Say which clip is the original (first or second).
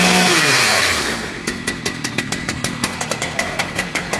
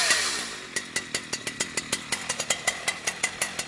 second